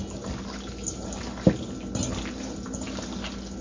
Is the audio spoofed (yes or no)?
no